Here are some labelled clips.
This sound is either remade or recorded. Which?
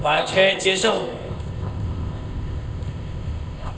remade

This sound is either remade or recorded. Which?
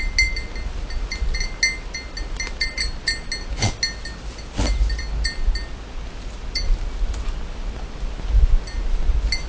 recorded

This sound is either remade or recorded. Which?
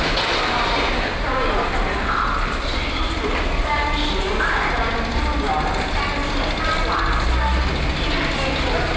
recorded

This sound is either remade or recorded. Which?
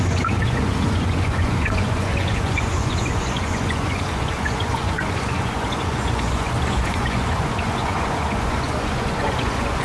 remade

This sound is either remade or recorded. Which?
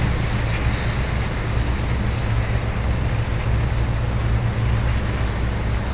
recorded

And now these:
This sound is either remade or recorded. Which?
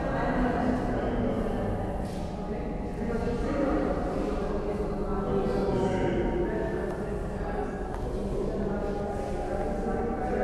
recorded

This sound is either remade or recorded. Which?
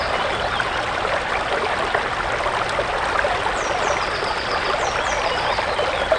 recorded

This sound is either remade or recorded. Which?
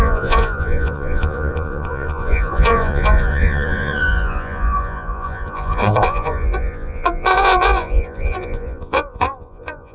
remade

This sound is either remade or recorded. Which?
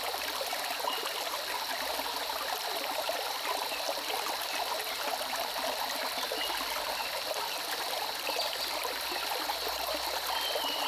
recorded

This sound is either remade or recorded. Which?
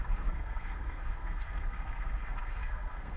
remade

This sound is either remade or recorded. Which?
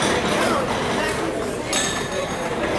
recorded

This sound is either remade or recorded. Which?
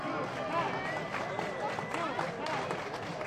recorded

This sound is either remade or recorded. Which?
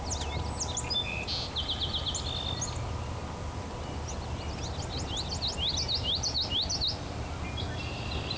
recorded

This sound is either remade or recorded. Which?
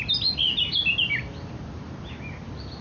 recorded